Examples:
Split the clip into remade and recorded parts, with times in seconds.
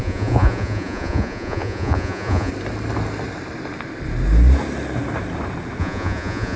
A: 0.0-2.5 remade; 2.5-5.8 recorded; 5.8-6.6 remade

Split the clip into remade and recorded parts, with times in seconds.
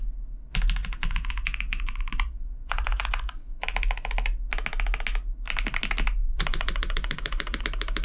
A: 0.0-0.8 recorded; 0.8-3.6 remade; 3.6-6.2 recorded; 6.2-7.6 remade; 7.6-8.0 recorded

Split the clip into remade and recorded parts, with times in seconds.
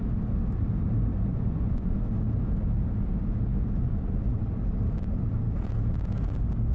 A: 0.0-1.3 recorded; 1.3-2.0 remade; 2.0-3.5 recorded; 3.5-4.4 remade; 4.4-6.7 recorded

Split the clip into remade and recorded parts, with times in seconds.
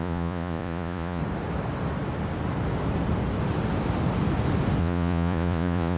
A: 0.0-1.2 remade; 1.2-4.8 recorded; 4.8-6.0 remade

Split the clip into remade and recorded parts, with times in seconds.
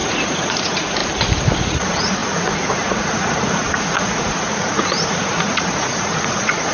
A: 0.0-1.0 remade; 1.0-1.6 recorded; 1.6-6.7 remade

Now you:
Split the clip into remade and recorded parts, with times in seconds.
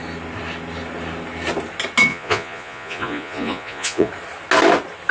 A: 0.0-2.1 recorded; 2.1-4.1 remade; 4.1-5.1 recorded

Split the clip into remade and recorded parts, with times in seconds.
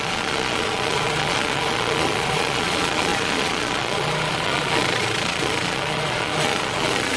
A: 0.0-7.2 remade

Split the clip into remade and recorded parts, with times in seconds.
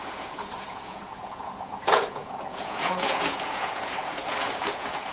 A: 0.0-5.1 remade